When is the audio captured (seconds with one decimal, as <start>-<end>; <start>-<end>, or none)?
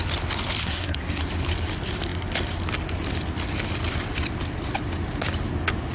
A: 0.0-0.6; 1.2-5.9